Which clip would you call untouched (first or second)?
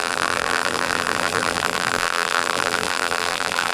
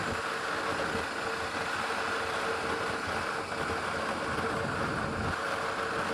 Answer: second